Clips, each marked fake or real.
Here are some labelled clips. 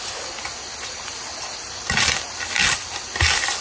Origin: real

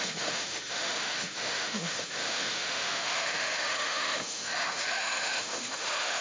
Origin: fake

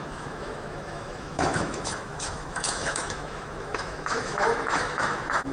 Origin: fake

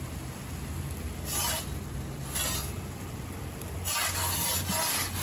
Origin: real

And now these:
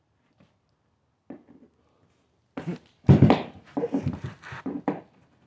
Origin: real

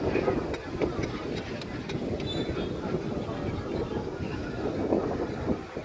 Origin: real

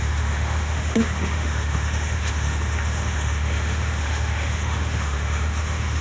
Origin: fake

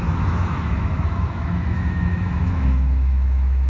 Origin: fake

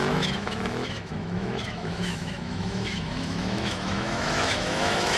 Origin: fake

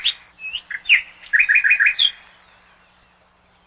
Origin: real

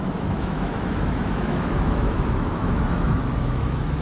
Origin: fake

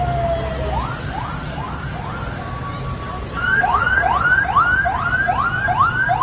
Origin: real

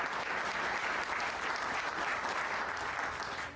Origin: real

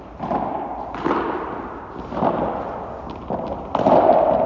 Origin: real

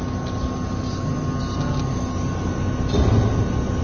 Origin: real